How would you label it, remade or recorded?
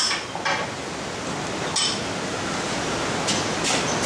recorded